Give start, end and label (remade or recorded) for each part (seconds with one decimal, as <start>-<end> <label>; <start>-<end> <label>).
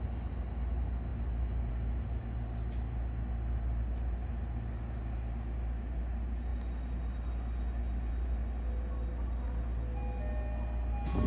0.0-11.3 recorded